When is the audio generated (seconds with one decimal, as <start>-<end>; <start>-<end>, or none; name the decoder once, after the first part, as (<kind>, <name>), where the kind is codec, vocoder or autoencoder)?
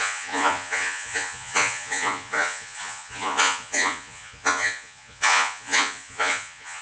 0.0-6.8 (vocoder, Vocos)